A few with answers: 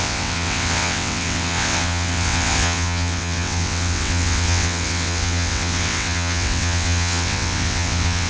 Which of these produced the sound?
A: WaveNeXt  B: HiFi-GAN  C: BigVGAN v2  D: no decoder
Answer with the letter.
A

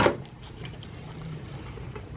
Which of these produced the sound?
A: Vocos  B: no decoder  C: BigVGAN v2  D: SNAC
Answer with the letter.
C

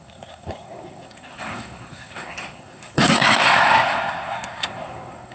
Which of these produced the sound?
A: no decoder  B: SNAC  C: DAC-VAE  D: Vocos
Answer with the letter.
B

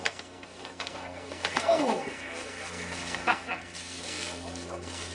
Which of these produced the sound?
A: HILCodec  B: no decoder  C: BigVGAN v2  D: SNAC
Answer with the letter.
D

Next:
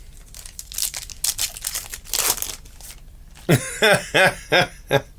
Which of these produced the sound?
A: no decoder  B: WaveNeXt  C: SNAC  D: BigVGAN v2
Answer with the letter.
A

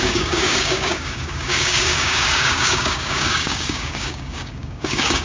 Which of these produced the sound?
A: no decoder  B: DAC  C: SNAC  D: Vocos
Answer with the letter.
B